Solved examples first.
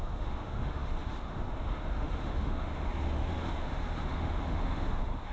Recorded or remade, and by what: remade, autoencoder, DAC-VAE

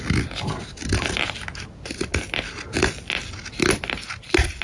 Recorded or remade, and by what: recorded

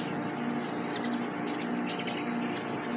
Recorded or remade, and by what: recorded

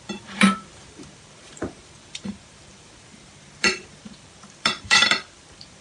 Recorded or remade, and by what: remade, vocoder, BigVGAN v2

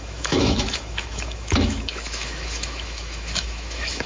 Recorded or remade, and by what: remade, autoencoder, DAC-VAE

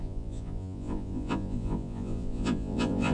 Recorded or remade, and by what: remade, vocoder, Vocos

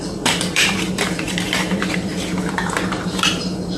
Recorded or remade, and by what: remade, vocoder, BigVGAN v2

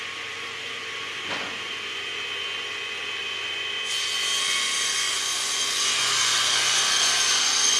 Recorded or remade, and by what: remade, vocoder, Vocos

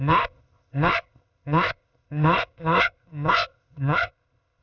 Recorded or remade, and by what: remade, codec, ZipCodec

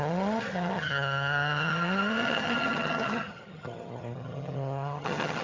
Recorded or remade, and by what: remade, vocoder, HiFi-GAN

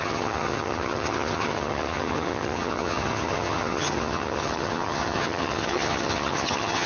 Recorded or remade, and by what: remade, vocoder, HiFi-GAN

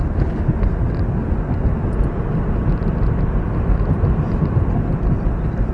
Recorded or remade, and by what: recorded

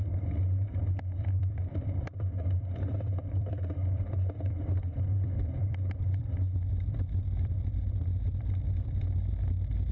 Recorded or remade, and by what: remade, vocoder, BigVGAN v2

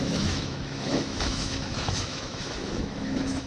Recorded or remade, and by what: remade, autoencoder, DAC-VAE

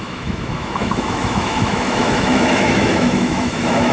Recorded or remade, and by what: remade, autoencoder, DAC-VAE